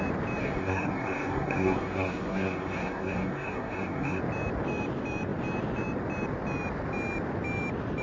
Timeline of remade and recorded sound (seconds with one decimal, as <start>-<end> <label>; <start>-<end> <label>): 0.0-0.4 recorded; 0.4-4.2 remade; 4.2-8.0 recorded